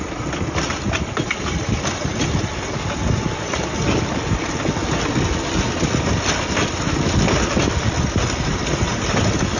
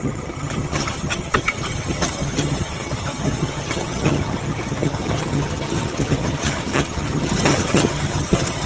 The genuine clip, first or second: first